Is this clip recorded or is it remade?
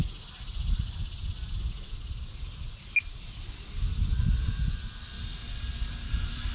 recorded